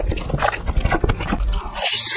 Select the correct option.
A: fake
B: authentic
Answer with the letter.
B